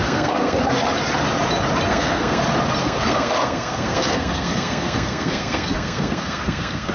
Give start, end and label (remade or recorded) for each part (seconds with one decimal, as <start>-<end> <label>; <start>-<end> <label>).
0.0-0.6 remade; 0.6-1.9 recorded; 1.9-2.4 remade; 2.4-2.8 recorded; 2.8-6.9 remade